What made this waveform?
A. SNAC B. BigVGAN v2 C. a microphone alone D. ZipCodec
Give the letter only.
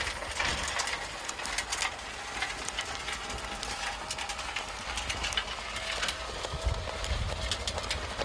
C